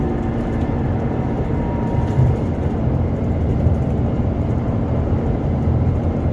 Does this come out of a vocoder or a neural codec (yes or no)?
yes